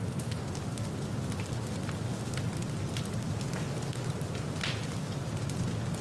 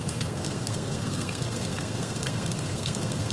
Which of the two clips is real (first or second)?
first